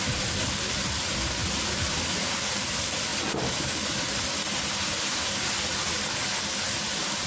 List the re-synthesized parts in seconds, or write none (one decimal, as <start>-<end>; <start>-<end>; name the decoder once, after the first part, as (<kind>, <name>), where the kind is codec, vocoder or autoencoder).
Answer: none